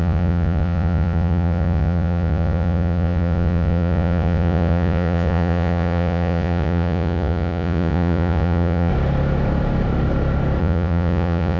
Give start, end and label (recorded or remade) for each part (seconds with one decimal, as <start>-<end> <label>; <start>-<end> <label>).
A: 0.0-8.9 remade; 8.9-10.6 recorded; 10.6-11.6 remade